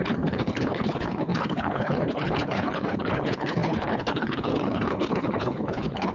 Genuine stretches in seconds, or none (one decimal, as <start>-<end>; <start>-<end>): none

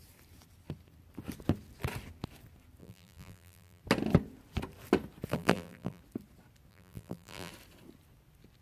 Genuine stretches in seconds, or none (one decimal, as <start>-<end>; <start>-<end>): 0.0-2.8; 3.8-5.3; 6.0-6.7; 7.5-8.6